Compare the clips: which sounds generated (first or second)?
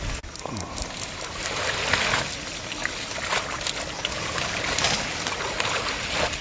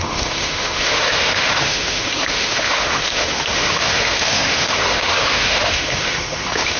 second